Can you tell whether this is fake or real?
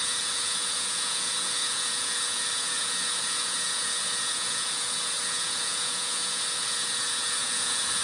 fake